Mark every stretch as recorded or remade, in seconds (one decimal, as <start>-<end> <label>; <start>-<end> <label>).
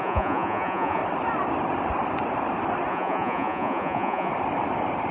0.0-1.0 remade; 1.0-2.9 recorded; 2.9-4.3 remade; 4.3-5.1 recorded